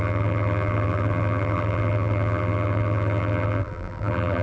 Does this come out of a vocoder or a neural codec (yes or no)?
yes